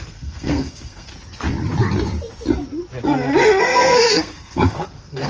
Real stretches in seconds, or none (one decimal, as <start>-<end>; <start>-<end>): 1.1-3.6